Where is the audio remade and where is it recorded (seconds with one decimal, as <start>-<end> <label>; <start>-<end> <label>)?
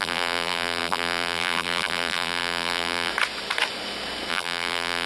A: 0.0-3.1 remade; 3.1-4.3 recorded; 4.3-5.1 remade